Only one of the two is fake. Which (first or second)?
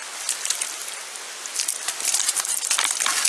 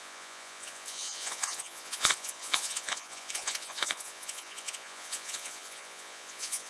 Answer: second